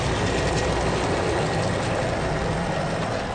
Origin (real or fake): real